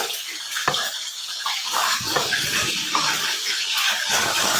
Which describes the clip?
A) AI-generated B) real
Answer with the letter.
A